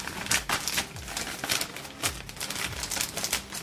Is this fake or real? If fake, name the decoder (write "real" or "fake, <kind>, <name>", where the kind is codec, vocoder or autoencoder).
real